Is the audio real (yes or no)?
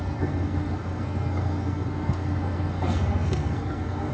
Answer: no